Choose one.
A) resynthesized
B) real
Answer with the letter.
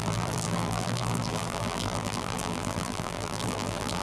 A